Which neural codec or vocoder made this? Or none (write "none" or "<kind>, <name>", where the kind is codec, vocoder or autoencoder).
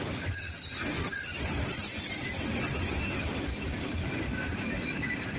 none